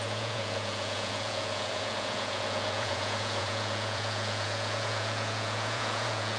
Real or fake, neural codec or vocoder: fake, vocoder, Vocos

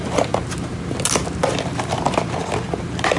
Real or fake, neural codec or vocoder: fake, vocoder, BigVGAN v2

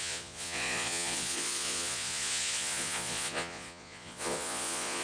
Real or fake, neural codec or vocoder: fake, vocoder, Vocos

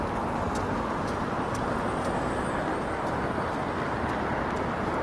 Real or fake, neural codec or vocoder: real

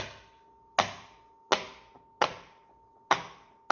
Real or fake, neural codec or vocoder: real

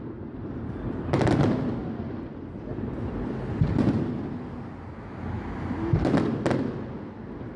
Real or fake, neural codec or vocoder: real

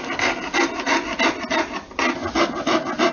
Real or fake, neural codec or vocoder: real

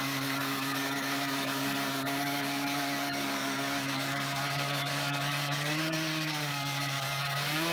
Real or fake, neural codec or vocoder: fake, codec, DAC